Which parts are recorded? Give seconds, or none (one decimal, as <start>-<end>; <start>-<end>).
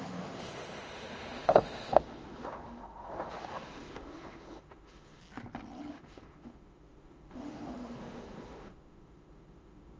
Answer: 5.2-5.9